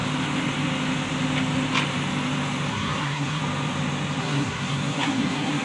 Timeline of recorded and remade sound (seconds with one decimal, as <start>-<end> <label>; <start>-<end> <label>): 0.0-2.7 recorded; 2.7-3.4 remade; 3.4-4.2 recorded; 4.2-5.6 remade